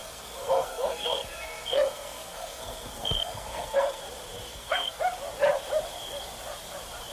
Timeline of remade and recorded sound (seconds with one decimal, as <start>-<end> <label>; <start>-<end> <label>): 0.0-4.0 remade; 4.0-4.5 recorded; 4.5-5.0 remade; 5.0-7.1 recorded